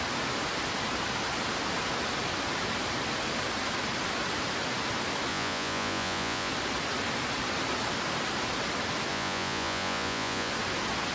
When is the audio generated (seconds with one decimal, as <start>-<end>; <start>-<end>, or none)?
5.3-6.5; 9.1-10.5